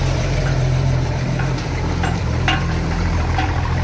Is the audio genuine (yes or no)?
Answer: no